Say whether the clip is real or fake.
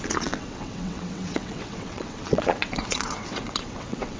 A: fake